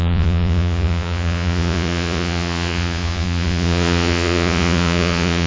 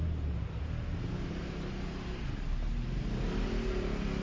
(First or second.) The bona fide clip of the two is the second